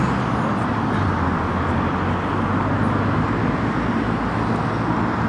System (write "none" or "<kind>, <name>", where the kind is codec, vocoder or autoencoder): none